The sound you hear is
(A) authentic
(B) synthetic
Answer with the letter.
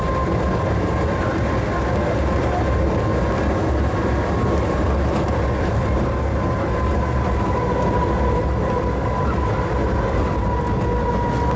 A